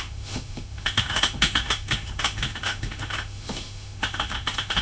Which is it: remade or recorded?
remade